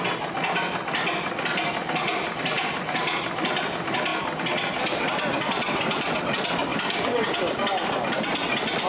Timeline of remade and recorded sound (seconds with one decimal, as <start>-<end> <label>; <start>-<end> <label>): 0.0-6.7 recorded; 6.7-7.4 remade; 7.4-8.9 recorded